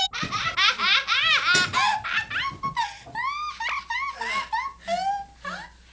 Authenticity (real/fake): real